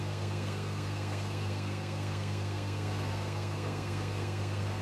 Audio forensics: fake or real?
fake